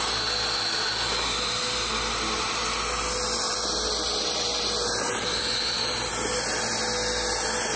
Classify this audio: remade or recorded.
recorded